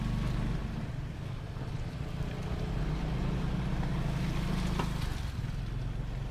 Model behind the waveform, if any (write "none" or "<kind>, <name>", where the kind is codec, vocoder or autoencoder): none